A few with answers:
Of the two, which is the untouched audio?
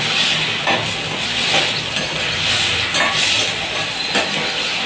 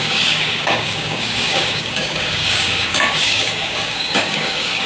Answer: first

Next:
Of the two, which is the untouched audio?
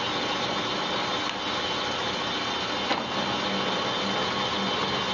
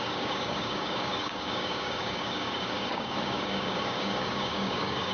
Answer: first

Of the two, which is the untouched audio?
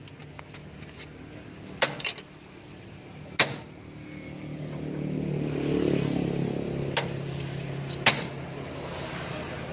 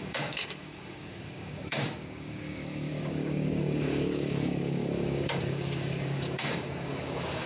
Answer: first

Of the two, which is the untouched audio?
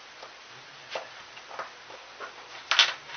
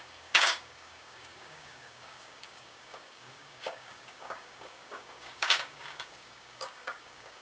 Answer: first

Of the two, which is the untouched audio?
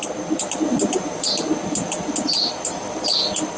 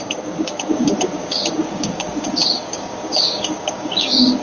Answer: first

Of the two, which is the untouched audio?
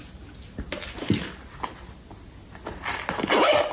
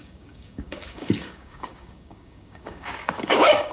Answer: first